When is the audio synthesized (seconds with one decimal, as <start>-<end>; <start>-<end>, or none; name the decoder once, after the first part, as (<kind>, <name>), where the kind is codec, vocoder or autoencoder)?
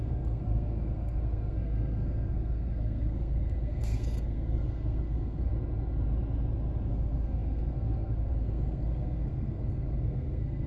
0.0-5.5 (codec, SNAC); 6.9-10.7